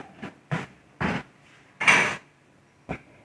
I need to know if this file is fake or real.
fake